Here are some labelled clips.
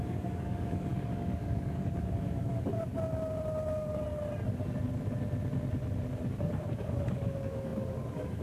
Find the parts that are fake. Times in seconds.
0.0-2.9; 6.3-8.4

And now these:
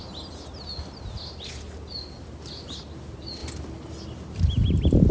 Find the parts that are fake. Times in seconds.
none

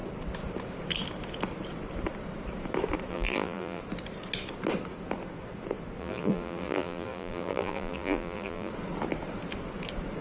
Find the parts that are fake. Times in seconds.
3.1-3.8; 6.0-8.7

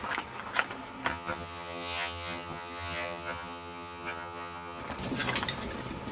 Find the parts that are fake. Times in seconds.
1.1-4.8

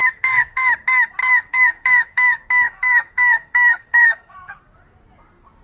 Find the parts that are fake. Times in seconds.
0.0-0.7; 1.2-4.6

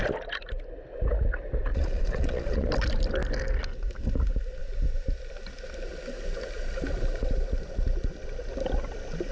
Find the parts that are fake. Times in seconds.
1.7-2.7

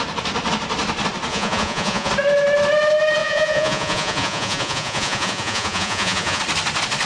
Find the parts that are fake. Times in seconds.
1.3-2.1; 3.2-6.4

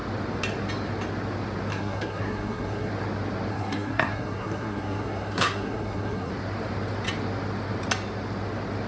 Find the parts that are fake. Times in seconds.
1.7-2.9; 3.5-6.3